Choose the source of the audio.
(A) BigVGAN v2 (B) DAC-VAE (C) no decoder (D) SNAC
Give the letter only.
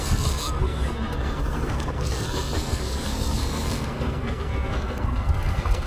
D